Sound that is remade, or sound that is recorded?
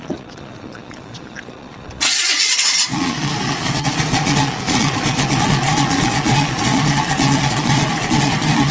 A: remade